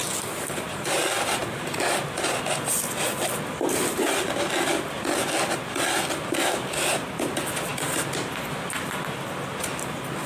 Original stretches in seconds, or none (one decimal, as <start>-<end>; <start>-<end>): 0.0-10.3